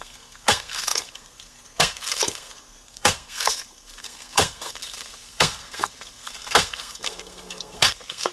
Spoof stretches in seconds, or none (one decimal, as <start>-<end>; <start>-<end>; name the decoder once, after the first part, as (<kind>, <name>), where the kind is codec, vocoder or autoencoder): 0.0-8.3 (codec, SNAC)